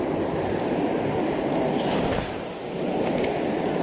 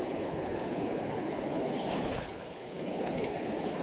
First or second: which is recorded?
first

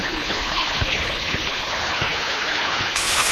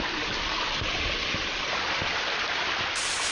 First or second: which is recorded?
second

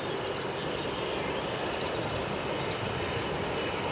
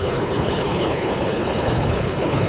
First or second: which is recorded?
first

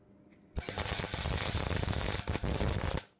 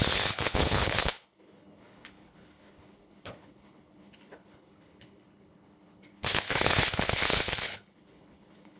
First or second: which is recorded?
first